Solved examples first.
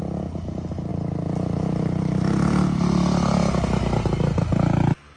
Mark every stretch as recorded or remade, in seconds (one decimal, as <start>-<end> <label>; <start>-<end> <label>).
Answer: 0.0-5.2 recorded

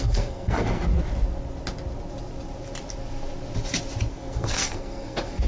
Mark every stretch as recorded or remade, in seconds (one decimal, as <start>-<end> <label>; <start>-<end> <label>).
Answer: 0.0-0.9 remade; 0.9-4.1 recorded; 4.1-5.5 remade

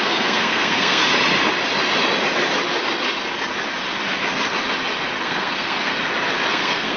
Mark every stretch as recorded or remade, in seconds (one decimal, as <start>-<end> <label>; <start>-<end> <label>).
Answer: 0.0-1.0 remade; 1.0-5.2 recorded; 5.2-5.9 remade; 5.9-6.5 recorded; 6.5-7.0 remade

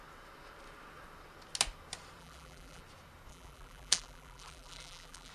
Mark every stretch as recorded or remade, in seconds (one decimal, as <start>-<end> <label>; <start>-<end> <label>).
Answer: 0.0-2.2 recorded; 2.2-2.8 remade; 2.8-3.3 recorded; 3.3-5.3 remade

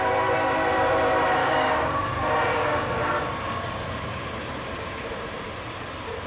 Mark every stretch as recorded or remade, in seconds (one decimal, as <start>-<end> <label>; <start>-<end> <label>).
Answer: 0.0-1.4 recorded; 1.4-2.1 remade; 2.1-2.5 recorded; 2.5-3.1 remade; 3.1-6.3 recorded

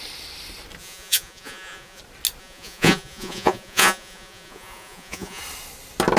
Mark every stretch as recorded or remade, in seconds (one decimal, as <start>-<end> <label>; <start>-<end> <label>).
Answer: 0.0-0.8 recorded; 0.8-2.0 remade; 2.0-2.4 recorded; 2.4-5.4 remade; 5.4-6.2 recorded

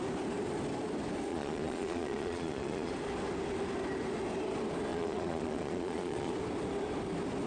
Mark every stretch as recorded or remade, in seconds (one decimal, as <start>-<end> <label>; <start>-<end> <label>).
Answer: 0.0-1.3 recorded; 1.3-2.9 remade; 2.9-4.9 recorded; 4.9-6.3 remade; 6.3-7.5 recorded

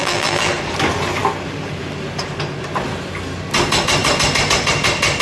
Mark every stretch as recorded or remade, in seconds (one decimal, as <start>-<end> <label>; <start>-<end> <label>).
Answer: 0.0-0.5 remade; 0.5-5.2 recorded